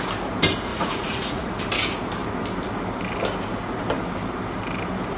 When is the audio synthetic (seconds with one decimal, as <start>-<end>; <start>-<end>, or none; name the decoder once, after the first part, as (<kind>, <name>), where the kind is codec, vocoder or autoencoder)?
0.7-1.6 (vocoder, Vocos)